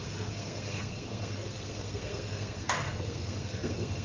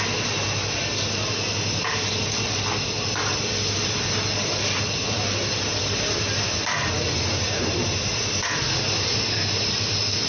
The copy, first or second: first